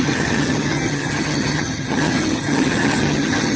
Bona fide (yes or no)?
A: no